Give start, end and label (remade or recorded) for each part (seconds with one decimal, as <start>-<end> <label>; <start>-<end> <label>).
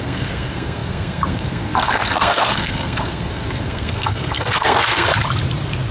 0.0-5.1 remade; 5.1-5.9 recorded